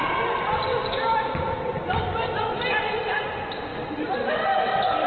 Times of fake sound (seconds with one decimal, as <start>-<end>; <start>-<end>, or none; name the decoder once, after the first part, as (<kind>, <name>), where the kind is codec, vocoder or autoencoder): none